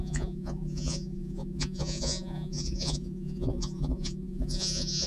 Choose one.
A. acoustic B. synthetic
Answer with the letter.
B